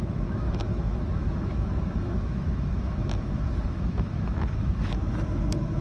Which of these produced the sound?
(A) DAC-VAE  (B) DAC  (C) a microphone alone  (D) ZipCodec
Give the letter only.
A